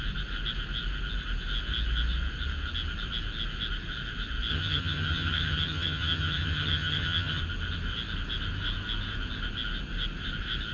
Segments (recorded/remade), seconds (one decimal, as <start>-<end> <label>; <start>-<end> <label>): 0.0-4.5 recorded; 4.5-7.4 remade; 7.4-10.7 recorded